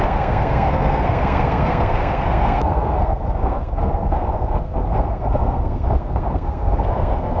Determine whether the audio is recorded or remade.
remade